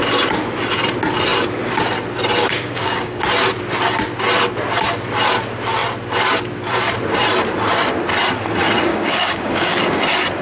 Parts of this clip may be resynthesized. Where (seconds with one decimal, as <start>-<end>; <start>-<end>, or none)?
2.4-3.2; 8.9-10.0